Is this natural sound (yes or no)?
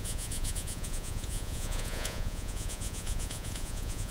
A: no